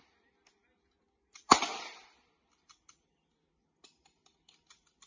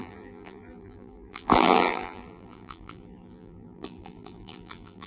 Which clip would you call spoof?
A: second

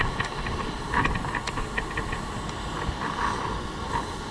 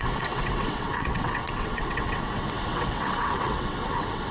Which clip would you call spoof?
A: second